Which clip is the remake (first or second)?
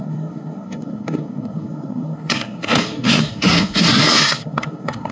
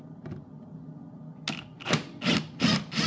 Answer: first